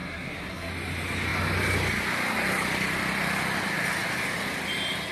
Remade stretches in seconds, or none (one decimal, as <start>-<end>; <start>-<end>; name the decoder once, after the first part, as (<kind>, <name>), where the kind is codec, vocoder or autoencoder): 0.0-0.7 (codec, SNAC)